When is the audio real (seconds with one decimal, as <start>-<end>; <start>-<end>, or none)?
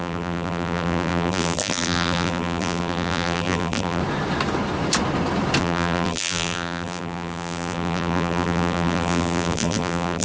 4.0-5.6